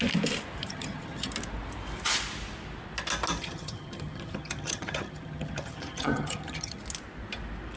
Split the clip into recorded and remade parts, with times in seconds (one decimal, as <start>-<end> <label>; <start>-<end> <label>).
0.0-0.6 recorded; 0.6-1.3 remade; 1.3-3.4 recorded; 3.4-6.8 remade; 6.8-7.8 recorded